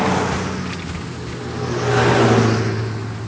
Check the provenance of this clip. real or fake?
real